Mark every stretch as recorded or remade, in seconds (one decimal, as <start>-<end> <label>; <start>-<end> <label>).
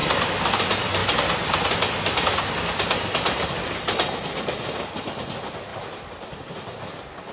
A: 0.0-5.7 recorded; 5.7-6.7 remade; 6.7-7.3 recorded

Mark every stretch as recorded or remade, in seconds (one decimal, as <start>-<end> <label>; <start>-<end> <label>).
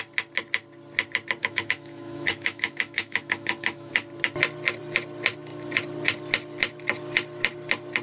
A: 0.0-1.4 recorded; 1.4-3.9 remade; 3.9-8.0 recorded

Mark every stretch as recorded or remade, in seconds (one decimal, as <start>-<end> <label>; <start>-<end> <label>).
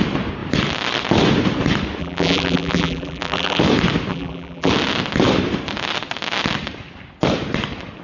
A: 0.0-2.0 recorded; 2.0-3.6 remade; 3.6-4.1 recorded; 4.1-4.7 remade; 4.7-8.0 recorded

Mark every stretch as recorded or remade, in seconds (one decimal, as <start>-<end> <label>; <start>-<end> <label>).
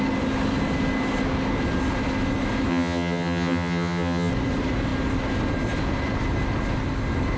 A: 0.0-2.7 recorded; 2.7-4.3 remade; 4.3-7.4 recorded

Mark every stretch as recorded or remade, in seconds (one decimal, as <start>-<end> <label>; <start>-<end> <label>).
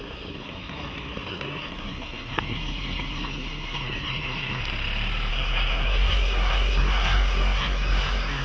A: 0.0-4.6 remade; 4.6-5.3 recorded; 5.3-8.4 remade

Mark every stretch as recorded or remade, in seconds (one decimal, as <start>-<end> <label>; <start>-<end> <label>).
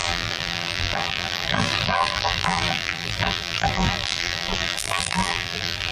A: 0.0-5.9 remade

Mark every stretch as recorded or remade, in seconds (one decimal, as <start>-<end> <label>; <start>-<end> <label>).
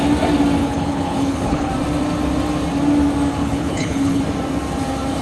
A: 0.0-0.6 recorded; 0.6-1.7 remade; 1.7-3.4 recorded; 3.4-4.2 remade; 4.2-5.2 recorded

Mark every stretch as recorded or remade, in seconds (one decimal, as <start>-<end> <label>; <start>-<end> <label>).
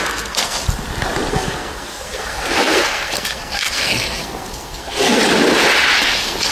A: 0.0-0.6 remade; 0.6-1.3 recorded; 1.3-5.2 remade; 5.2-6.0 recorded; 6.0-6.5 remade